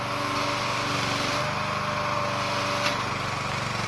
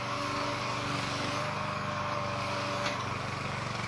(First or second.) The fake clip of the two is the second